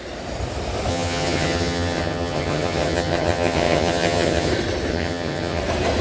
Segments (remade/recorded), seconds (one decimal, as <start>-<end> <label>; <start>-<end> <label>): 0.0-0.9 recorded; 0.9-4.5 remade; 4.5-4.9 recorded; 4.9-5.6 remade; 5.6-6.0 recorded